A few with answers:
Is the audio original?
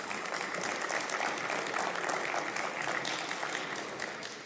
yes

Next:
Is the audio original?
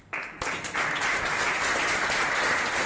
yes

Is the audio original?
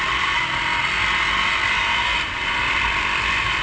yes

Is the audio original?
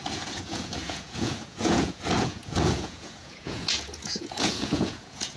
no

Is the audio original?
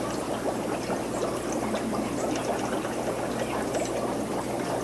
yes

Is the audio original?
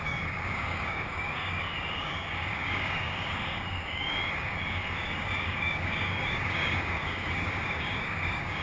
no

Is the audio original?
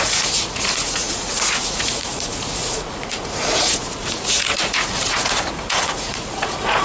no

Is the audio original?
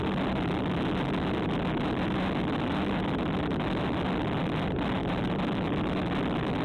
yes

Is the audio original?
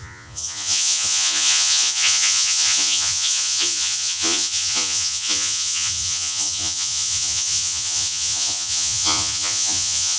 no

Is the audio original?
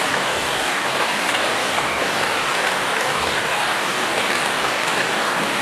no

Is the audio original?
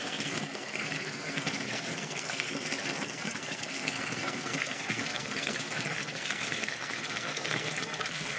no